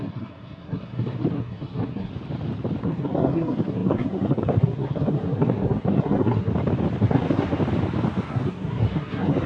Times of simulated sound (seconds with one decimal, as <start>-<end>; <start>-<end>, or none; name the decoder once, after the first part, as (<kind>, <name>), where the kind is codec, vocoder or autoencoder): 0.0-2.1 (codec, SNAC); 2.8-6.5; 7.0-7.6; 8.3-9.5